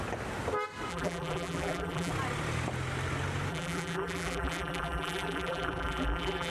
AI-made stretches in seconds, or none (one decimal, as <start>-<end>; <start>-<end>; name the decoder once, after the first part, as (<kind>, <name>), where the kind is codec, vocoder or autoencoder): 0.9-2.1 (vocoder, BigVGAN v2); 3.5-6.5